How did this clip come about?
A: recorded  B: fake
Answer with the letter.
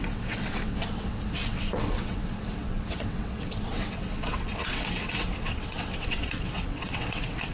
B